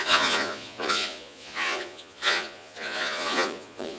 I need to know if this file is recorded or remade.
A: remade